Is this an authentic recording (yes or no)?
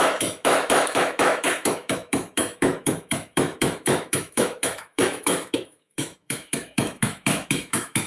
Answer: no